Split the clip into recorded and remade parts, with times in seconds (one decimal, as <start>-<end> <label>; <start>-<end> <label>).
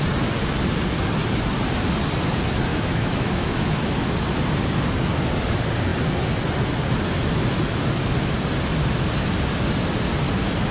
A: 0.0-2.7 recorded; 2.7-3.9 remade; 3.9-10.7 recorded